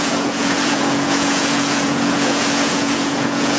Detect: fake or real fake